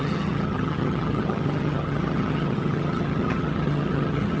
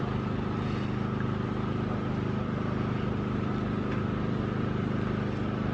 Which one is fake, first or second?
first